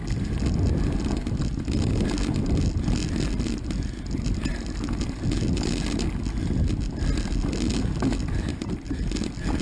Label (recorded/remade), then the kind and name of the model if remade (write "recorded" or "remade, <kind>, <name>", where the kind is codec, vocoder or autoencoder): recorded